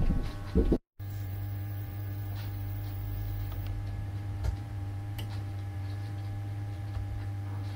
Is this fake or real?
fake